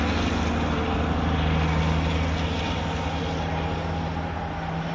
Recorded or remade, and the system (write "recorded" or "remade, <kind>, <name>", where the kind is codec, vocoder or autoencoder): recorded